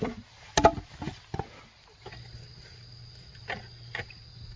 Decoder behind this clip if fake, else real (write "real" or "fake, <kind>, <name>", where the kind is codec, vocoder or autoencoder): real